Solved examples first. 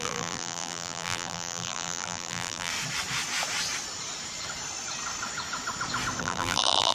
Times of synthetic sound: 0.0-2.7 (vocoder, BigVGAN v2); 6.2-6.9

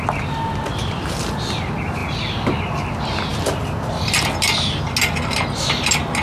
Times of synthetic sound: none